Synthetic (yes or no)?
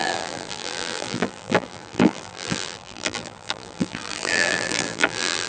yes